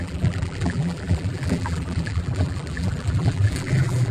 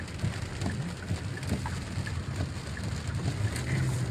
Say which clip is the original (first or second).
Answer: second